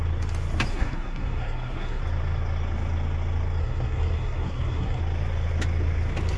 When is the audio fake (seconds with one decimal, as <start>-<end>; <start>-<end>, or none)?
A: 0.7-2.0; 3.6-5.0